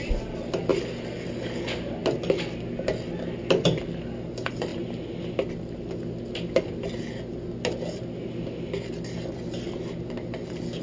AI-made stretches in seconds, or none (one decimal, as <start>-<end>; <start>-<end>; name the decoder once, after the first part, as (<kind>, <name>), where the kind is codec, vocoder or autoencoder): none